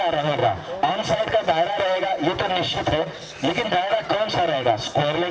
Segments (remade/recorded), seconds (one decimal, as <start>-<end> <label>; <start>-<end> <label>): 0.0-0.4 remade; 0.4-0.9 recorded; 0.9-5.3 remade